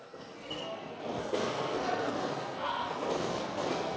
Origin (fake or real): fake